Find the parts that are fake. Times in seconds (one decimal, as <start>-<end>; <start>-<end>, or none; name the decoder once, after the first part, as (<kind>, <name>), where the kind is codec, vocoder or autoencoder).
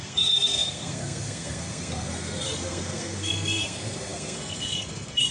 0.0-5.3 (codec, SNAC)